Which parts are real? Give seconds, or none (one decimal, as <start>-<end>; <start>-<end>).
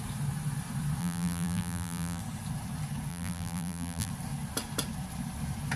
0.0-1.0; 2.2-3.1; 4.1-5.8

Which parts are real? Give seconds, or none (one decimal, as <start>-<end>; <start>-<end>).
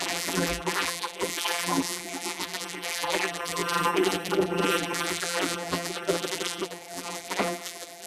none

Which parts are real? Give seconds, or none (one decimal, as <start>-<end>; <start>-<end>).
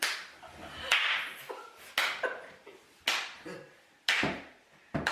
0.0-5.1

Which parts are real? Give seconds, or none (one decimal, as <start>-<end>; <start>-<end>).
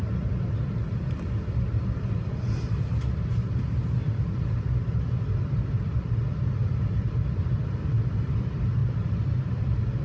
0.0-4.0; 7.9-8.8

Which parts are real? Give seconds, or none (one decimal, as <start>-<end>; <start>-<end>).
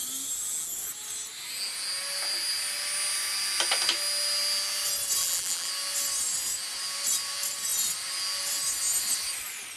0.0-5.2; 5.7-9.8